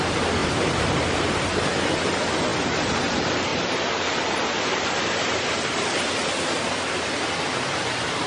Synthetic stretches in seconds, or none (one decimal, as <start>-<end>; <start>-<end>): 0.4-1.7; 3.5-7.3